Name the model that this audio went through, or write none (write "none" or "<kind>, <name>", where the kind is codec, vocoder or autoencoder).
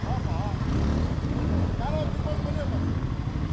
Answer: none